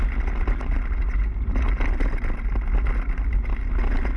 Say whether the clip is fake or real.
real